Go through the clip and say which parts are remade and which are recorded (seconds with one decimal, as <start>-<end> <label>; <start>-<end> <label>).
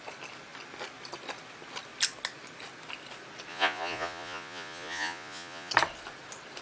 0.0-3.5 recorded; 3.5-5.7 remade; 5.7-6.6 recorded